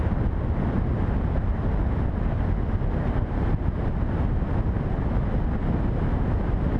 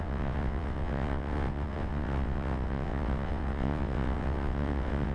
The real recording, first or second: first